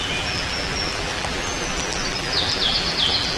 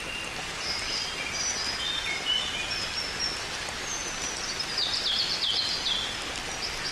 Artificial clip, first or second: first